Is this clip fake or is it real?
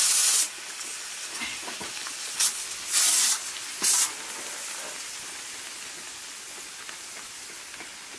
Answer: real